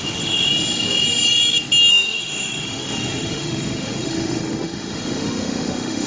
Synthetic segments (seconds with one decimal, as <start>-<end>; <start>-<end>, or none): 0.0-0.5; 1.9-6.1